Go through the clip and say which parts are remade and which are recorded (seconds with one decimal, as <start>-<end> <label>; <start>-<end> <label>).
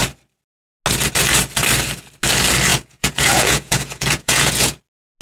0.0-2.7 recorded; 2.7-4.8 remade; 4.8-5.2 recorded